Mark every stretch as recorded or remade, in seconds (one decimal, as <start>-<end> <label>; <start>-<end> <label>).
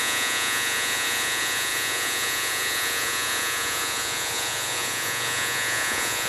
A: 0.0-6.3 remade